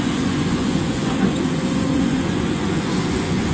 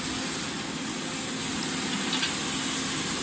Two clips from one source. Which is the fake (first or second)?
first